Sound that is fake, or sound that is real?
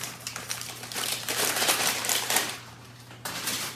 fake